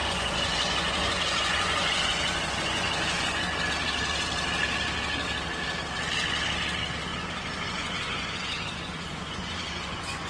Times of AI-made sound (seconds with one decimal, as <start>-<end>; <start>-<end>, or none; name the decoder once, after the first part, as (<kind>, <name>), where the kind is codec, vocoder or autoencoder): 0.0-3.6 (vocoder, Vocos); 7.1-10.3